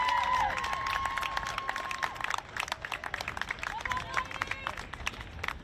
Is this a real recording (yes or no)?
yes